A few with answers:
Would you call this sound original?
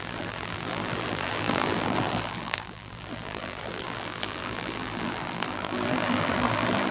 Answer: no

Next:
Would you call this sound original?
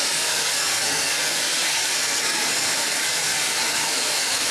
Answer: no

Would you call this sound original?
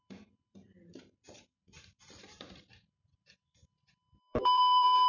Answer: no